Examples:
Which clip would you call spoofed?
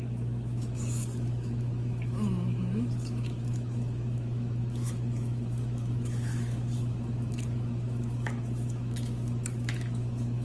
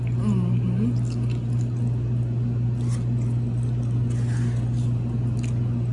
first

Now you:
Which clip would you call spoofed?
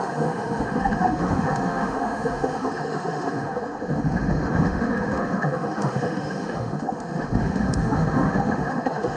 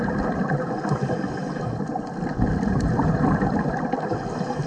first